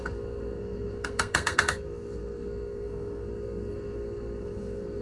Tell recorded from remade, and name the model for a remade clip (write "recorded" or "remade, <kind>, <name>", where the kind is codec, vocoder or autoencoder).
remade, codec, SNAC